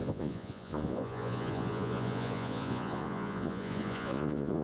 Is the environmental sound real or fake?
fake